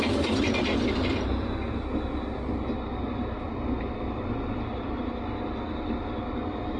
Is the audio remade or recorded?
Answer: recorded